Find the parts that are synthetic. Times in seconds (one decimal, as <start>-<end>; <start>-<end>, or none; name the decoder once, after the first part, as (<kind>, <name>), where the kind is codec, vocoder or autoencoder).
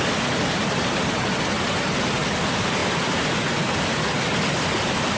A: none